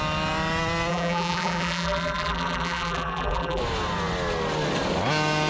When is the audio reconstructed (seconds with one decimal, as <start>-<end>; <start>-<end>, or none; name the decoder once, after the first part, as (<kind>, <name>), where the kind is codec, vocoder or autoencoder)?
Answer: 0.9-3.6 (vocoder, BigVGAN v2)